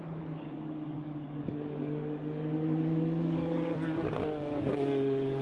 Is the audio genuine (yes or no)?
no